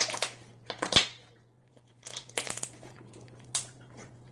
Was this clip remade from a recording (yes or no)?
yes